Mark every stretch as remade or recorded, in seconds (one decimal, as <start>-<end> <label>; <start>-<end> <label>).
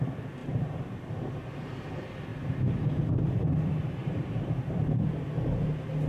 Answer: 0.0-0.4 recorded; 0.4-1.5 remade; 1.5-2.3 recorded; 2.3-3.4 remade; 3.4-4.0 recorded; 4.0-5.2 remade; 5.2-6.1 recorded